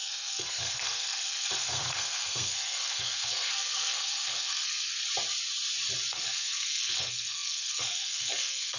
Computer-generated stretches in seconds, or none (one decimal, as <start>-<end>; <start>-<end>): 0.0-5.0; 6.1-8.8